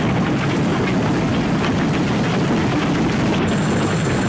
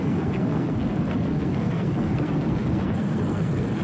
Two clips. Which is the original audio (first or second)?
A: first